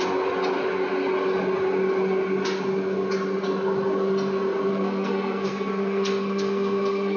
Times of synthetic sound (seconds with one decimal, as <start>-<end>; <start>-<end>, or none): 4.7-7.2